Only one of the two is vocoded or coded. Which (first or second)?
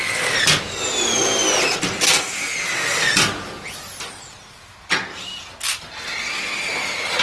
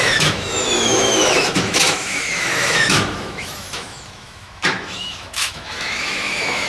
second